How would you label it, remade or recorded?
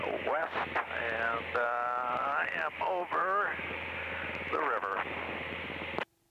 recorded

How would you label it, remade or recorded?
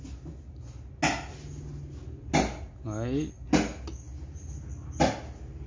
recorded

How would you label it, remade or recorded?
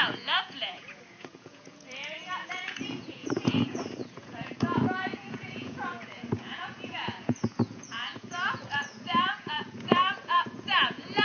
remade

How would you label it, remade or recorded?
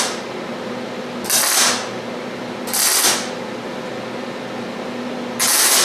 recorded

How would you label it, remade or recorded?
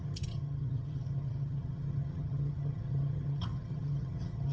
remade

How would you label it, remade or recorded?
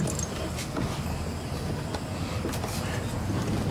recorded